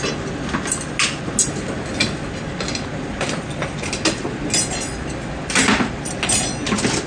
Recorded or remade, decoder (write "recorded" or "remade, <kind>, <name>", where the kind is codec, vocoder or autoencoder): recorded